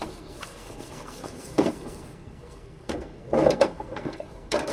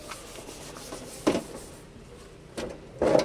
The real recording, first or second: second